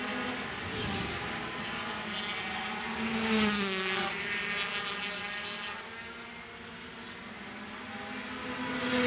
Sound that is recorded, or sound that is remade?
recorded